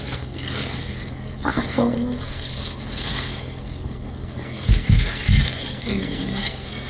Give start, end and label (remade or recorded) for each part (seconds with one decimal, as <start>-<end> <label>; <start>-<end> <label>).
0.0-6.9 remade